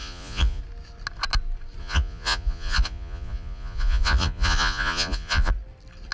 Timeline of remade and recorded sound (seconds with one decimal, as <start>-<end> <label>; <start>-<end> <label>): 0.0-0.6 remade; 0.6-1.8 recorded; 1.8-5.5 remade; 5.5-6.1 recorded